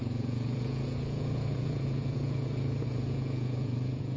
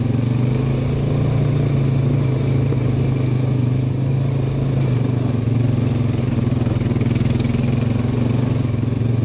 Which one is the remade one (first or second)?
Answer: first